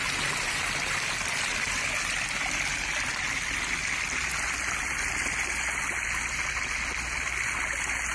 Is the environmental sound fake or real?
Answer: real